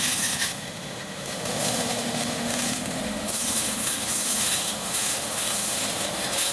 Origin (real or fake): fake